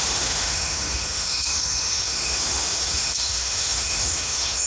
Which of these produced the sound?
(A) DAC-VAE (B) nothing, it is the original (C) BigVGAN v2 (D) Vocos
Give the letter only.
A